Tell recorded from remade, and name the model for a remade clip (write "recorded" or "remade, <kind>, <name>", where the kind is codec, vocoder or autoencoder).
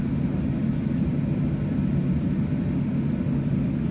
recorded